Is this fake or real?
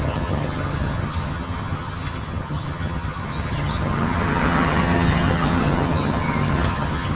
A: fake